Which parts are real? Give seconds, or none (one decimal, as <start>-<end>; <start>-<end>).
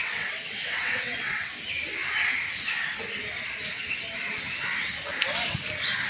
1.5-6.1